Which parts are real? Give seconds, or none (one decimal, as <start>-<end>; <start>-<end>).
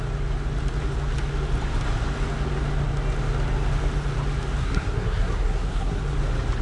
0.0-4.6; 6.0-6.6